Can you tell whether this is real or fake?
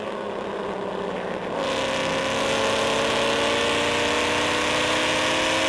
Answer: real